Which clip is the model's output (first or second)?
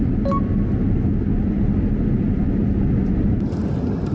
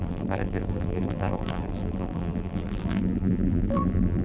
second